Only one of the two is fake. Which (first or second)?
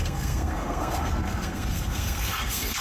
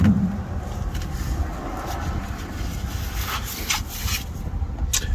first